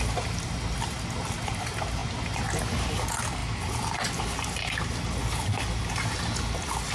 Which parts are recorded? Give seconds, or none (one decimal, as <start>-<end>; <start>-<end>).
0.0-6.9